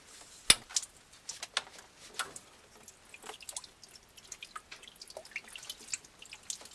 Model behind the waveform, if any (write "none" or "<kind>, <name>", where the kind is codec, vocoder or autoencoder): none